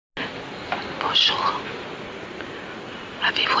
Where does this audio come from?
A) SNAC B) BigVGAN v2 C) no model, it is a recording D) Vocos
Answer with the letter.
C